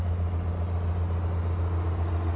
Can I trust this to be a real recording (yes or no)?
yes